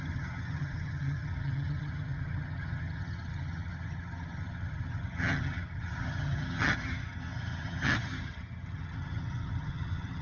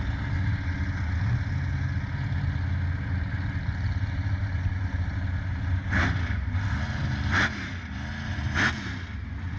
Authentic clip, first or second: second